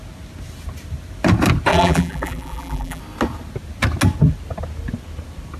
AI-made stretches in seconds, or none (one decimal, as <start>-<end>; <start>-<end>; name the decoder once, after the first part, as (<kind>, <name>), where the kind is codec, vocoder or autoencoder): 1.7-3.0 (vocoder, BigVGAN v2)

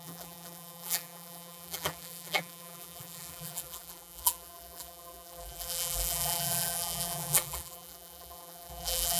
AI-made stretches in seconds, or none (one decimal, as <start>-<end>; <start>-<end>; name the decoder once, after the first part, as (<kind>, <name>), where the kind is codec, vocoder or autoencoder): 0.0-9.2 (vocoder, BigVGAN v2)

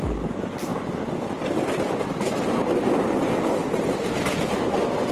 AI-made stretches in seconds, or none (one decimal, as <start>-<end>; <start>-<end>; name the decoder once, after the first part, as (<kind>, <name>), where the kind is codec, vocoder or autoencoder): none

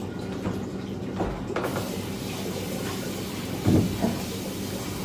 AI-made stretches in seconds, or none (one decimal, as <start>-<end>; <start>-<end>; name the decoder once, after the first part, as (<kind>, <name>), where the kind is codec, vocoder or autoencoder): none